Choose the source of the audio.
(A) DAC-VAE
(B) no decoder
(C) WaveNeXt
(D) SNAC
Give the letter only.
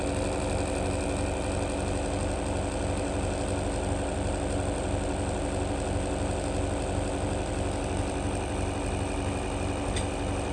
B